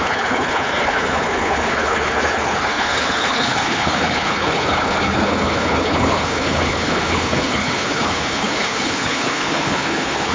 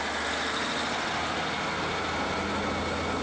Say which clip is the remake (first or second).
first